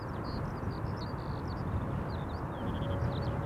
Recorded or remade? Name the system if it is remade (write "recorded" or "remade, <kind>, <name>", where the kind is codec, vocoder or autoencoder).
recorded